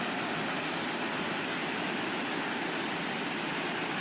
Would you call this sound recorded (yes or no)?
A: yes